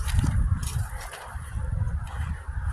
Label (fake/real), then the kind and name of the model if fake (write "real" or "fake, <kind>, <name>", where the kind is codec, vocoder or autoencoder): fake, vocoder, BigVGAN v2